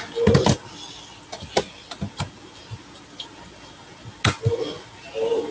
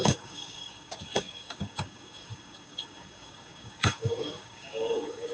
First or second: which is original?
first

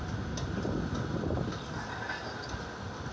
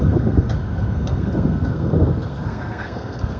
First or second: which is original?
first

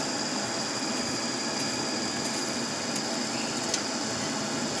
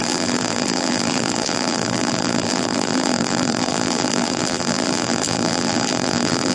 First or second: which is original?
first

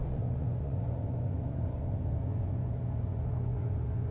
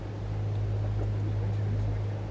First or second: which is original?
second